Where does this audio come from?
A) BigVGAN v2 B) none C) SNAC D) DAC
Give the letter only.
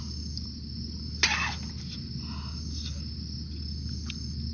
B